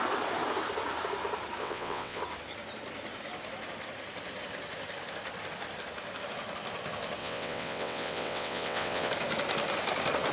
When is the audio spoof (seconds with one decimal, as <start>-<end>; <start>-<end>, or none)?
1.6-2.2; 7.2-9.1